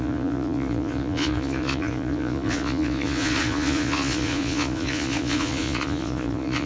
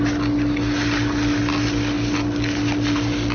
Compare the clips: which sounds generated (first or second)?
first